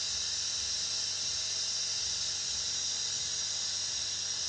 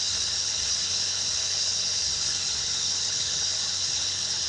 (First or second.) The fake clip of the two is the second